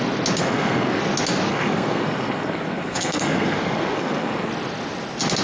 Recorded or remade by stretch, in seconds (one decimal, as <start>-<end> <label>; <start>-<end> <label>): 0.0-0.4 recorded; 0.4-1.0 remade; 1.0-1.5 recorded; 1.5-4.5 remade; 4.5-5.4 recorded